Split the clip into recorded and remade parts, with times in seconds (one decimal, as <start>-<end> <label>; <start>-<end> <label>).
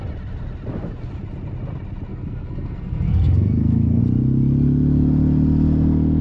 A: 0.0-2.1 recorded; 2.1-4.0 remade; 4.0-6.2 recorded